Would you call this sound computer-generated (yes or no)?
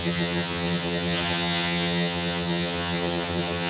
yes